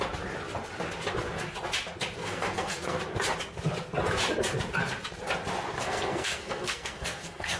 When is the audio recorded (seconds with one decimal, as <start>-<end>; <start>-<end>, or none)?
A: 0.0-2.2; 3.0-5.8